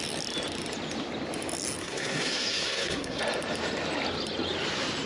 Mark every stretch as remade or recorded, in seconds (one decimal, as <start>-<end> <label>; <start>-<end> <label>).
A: 0.0-1.8 recorded; 1.8-3.2 remade; 3.2-5.1 recorded